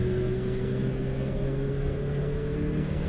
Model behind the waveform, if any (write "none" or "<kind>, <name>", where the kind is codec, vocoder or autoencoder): codec, SNAC